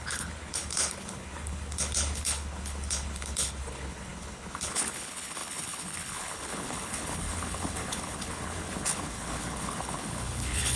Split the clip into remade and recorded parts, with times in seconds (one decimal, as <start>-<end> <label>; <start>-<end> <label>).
0.0-10.8 remade